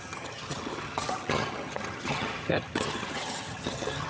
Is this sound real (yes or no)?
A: no